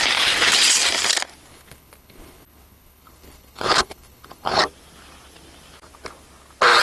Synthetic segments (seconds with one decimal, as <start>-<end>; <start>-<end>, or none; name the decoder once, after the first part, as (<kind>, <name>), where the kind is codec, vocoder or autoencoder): 1.5-4.6 (codec, HILCodec)